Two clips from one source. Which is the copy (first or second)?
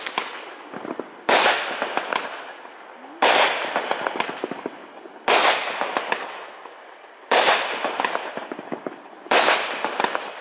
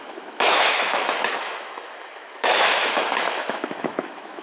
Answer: second